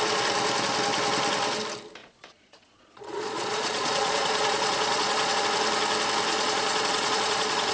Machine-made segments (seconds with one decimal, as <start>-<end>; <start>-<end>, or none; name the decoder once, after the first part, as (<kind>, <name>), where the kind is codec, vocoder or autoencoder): 2.0-5.4 (vocoder, Vocos); 6.3-7.7